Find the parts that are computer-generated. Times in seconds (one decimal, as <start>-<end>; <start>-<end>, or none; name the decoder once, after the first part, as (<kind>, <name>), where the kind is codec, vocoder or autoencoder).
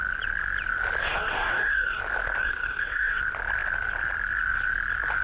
1.0-2.0 (codec, DAC); 2.4-3.2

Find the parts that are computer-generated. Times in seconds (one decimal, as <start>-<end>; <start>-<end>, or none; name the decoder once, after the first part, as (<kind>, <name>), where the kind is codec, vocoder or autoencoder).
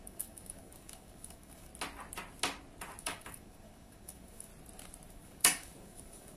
0.0-1.7 (codec, DAC); 3.0-4.5; 5.1-6.4